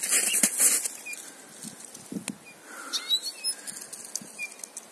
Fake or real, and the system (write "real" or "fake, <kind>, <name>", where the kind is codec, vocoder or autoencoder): real